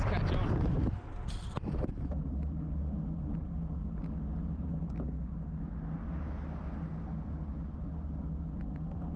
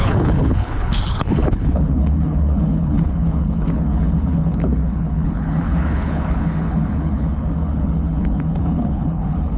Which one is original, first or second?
first